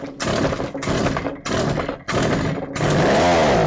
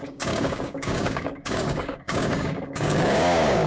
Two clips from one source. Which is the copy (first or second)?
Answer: second